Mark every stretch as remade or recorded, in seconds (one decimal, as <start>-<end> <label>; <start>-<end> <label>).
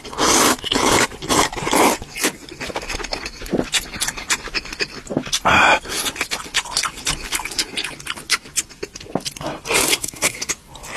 0.0-9.9 recorded; 9.9-10.5 remade; 10.5-11.0 recorded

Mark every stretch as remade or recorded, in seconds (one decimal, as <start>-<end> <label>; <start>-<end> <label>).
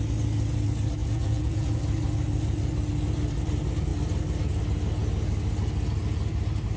0.0-1.0 recorded; 1.0-1.8 remade; 1.8-6.8 recorded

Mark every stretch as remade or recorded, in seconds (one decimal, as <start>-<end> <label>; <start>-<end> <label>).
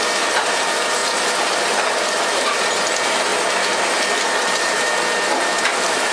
0.0-3.3 remade; 3.3-4.2 recorded; 4.2-6.1 remade